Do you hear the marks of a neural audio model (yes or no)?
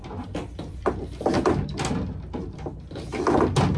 no